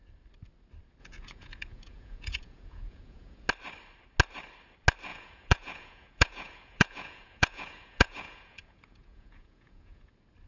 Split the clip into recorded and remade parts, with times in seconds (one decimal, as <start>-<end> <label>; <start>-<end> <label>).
0.0-1.0 recorded; 1.0-3.5 remade; 3.5-5.1 recorded; 5.1-10.1 remade; 10.1-10.5 recorded

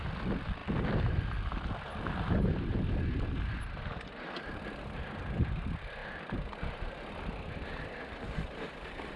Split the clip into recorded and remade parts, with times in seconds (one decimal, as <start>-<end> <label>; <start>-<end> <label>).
0.0-9.2 remade

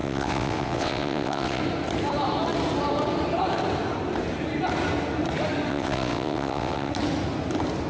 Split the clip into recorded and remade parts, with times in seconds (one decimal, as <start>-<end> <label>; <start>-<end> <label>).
0.0-1.6 remade; 1.6-5.7 recorded; 5.7-6.9 remade; 6.9-7.9 recorded

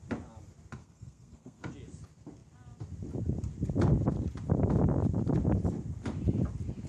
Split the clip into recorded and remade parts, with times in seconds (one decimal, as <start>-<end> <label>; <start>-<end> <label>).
0.0-0.8 recorded; 0.8-1.7 remade; 1.7-6.9 recorded

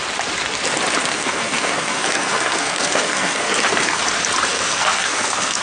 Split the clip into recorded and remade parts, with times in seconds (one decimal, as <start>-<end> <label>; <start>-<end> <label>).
0.0-1.1 recorded; 1.1-4.0 remade; 4.0-4.5 recorded; 4.5-5.6 remade

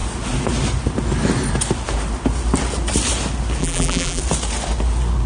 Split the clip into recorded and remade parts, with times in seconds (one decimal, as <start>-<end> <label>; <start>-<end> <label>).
0.0-3.6 recorded; 3.6-4.2 remade; 4.2-5.3 recorded

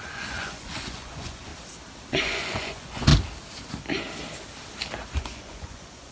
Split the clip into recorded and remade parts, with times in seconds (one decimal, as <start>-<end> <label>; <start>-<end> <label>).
0.0-1.5 remade; 1.5-2.1 recorded; 2.1-3.1 remade; 3.1-5.1 recorded; 5.1-6.1 remade

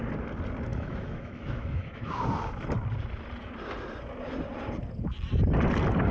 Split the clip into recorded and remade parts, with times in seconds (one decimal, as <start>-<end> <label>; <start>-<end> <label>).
0.0-0.7 recorded; 0.7-2.1 remade; 2.1-6.1 recorded